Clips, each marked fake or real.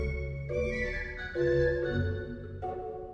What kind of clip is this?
real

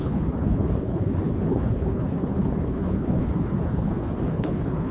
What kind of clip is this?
fake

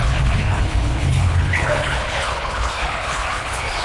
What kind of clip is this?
fake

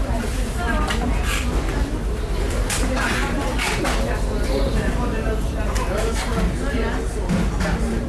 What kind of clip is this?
real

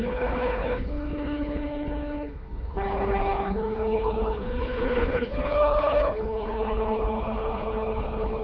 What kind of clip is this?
fake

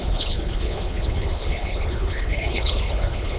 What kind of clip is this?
fake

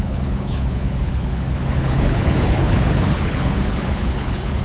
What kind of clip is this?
fake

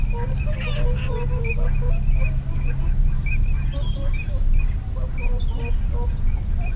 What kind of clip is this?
real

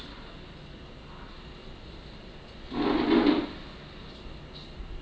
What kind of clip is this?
real